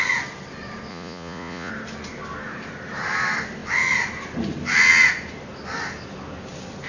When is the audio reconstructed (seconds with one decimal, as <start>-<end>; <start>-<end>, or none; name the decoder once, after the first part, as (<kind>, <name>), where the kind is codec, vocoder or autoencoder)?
0.9-1.7 (vocoder, Vocos)